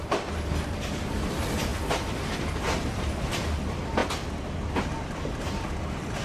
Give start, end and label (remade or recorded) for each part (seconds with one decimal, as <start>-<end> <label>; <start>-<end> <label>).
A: 0.0-6.2 recorded